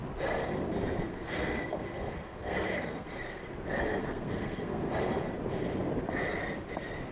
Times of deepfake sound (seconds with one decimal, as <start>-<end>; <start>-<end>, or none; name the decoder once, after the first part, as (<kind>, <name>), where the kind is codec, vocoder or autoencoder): 1.0-3.4 (codec, SNAC); 4.0-4.9